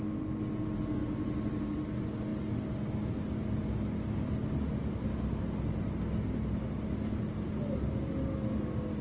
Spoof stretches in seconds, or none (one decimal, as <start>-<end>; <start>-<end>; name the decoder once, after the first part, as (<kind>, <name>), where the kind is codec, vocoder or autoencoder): none